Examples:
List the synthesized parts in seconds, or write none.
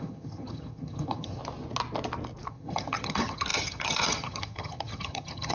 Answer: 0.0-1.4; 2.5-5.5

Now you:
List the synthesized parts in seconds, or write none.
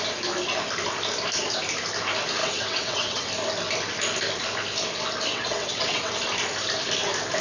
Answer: 2.4-3.3; 5.3-6.1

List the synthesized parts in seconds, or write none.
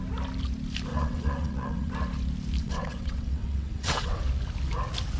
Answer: 0.9-1.9; 2.6-4.2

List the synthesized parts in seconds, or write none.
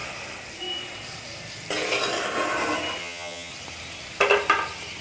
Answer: 3.0-3.5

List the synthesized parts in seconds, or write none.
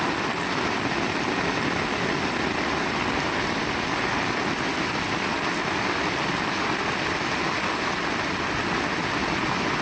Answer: none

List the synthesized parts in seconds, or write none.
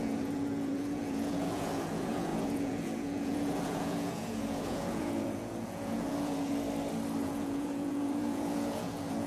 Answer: 0.0-6.5; 7.2-9.3